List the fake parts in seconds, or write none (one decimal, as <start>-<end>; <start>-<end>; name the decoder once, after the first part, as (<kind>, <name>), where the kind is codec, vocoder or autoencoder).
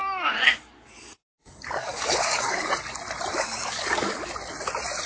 0.0-2.7 (codec, DAC); 3.3-4.3